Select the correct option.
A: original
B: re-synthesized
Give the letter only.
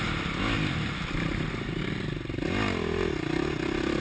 A